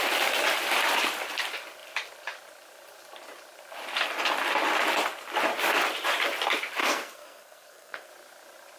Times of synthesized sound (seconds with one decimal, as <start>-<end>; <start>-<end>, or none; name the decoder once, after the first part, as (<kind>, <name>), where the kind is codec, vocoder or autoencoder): 6.8-8.1 (codec, SNAC)